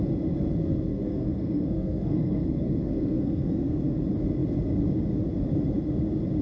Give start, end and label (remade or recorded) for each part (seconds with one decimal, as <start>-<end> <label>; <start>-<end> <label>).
0.0-0.6 recorded; 0.6-3.8 remade; 3.8-6.4 recorded